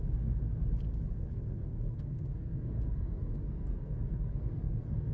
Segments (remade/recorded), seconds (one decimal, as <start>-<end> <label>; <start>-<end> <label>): 0.0-0.6 remade; 0.6-1.1 recorded; 1.1-5.1 remade